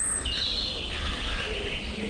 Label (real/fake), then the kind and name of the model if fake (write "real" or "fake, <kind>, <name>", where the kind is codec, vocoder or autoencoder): real